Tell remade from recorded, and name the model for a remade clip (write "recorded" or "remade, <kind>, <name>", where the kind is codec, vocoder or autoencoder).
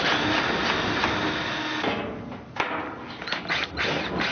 recorded